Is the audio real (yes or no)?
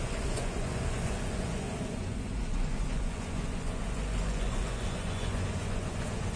no